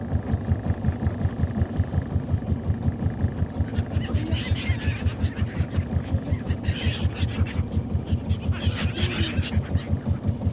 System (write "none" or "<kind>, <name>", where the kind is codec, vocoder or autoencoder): none